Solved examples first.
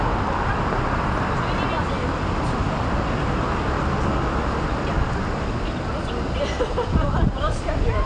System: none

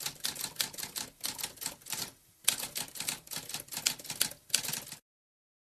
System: none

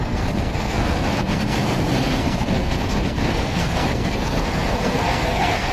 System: codec, SNAC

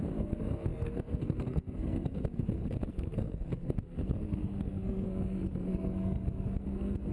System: codec, SNAC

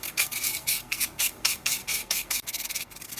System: codec, SNAC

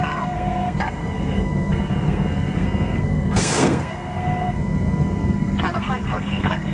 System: codec, SNAC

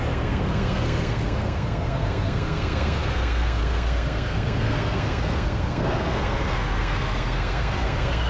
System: codec, SNAC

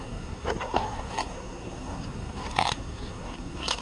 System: codec, SNAC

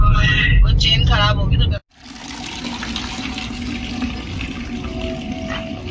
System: none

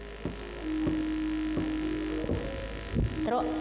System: none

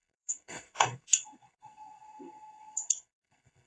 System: codec, SNAC